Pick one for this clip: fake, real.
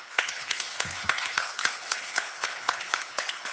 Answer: fake